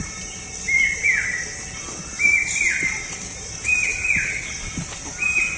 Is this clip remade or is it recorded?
recorded